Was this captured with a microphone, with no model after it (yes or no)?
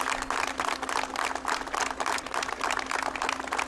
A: yes